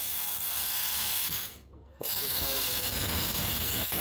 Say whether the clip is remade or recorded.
remade